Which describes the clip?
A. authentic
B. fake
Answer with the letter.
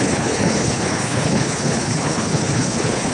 B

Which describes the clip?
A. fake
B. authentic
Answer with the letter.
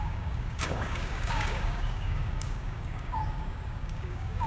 A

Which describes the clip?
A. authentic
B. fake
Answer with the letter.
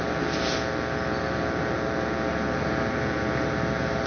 A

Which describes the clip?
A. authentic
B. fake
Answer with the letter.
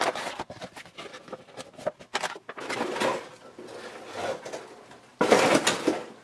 A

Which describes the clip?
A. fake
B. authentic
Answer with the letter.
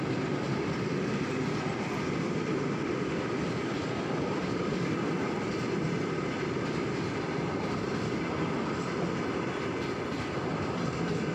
B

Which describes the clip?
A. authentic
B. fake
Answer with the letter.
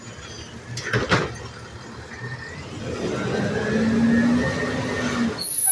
A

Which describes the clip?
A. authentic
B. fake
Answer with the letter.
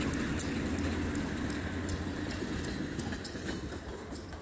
A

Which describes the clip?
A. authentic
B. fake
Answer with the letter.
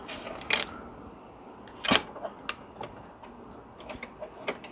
A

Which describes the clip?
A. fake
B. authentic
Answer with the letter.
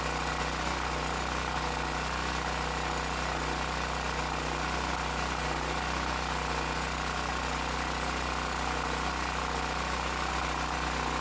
B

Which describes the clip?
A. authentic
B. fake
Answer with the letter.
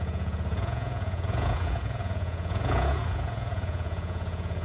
B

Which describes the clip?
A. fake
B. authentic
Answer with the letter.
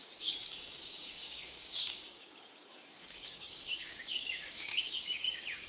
A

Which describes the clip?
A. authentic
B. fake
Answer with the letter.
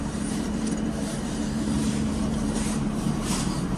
B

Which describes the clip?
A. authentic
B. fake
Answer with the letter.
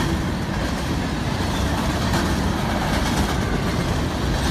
A